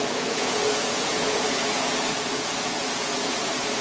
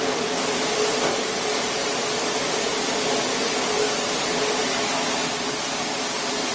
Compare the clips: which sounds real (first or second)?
second